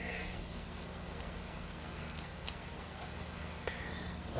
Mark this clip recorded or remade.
remade